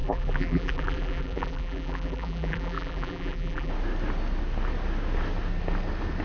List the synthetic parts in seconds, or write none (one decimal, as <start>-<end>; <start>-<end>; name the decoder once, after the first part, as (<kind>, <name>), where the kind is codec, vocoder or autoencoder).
0.0-3.7 (vocoder, BigVGAN v2)

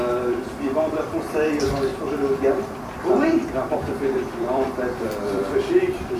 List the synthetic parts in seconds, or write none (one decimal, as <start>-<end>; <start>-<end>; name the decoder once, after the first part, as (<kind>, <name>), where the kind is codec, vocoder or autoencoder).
0.0-6.2 (vocoder, BigVGAN v2)